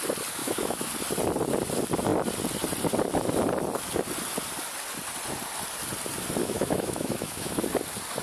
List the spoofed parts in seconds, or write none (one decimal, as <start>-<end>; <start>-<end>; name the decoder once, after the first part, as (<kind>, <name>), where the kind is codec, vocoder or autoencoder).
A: 0.4-0.9 (autoencoder, DAC-VAE); 6.4-7.6